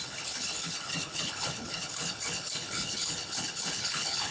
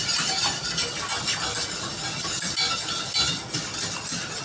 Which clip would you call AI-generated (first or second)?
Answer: first